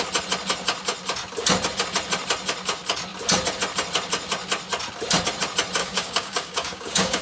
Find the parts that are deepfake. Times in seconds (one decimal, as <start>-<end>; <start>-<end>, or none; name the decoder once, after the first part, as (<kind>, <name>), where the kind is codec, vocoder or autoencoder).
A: 5.8-7.2 (codec, DAC)